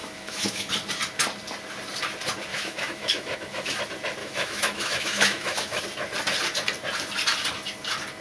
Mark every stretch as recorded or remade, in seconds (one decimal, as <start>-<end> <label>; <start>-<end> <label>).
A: 0.0-0.7 remade; 0.7-2.5 recorded; 2.5-3.8 remade; 3.8-4.2 recorded; 4.2-5.8 remade; 5.8-8.2 recorded